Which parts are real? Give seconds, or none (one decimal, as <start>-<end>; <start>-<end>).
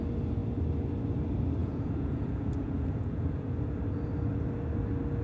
0.0-1.6; 3.6-5.2